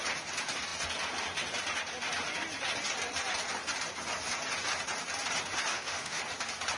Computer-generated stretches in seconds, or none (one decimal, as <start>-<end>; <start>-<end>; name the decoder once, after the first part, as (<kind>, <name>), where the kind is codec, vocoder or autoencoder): 5.7-6.2 (autoencoder, DAC-VAE)